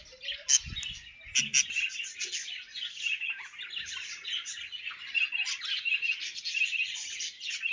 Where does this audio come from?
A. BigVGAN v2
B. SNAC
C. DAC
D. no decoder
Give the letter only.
D